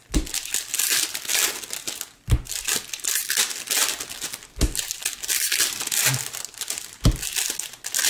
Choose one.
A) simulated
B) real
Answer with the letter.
B